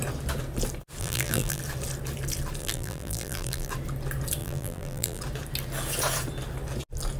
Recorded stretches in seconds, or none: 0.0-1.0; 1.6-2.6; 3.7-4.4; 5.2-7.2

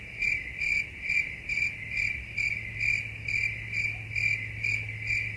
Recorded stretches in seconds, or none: 0.0-5.4

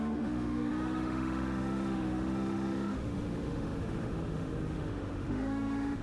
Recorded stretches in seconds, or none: none